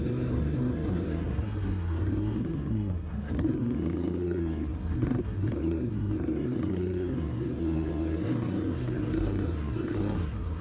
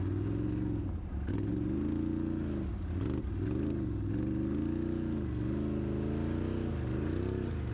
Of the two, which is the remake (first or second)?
first